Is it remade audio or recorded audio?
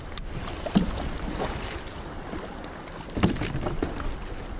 recorded